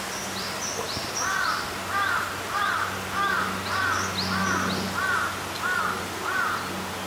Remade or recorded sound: recorded